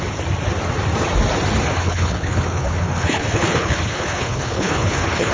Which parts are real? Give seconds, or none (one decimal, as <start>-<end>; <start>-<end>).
0.0-1.7